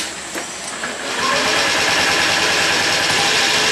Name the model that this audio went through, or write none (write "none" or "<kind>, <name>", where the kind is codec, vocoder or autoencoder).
none